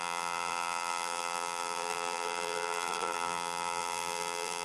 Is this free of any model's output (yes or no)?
no